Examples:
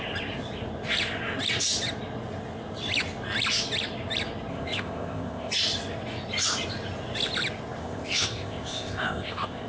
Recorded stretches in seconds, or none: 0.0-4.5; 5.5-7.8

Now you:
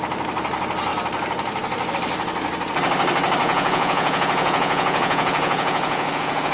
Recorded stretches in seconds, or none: 0.0-3.4

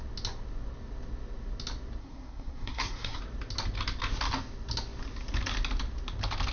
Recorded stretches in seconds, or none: 0.0-2.0; 3.2-6.5

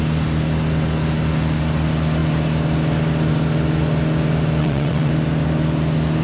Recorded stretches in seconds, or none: 0.0-4.6; 5.1-6.2